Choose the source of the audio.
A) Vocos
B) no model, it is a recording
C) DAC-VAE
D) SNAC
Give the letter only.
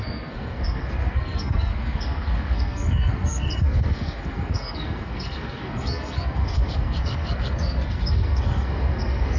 D